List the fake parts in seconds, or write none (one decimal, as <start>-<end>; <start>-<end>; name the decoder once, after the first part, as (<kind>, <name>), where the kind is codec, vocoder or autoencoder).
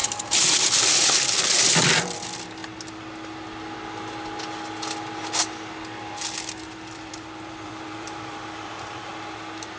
0.0-2.6 (vocoder, BigVGAN v2); 6.6-9.1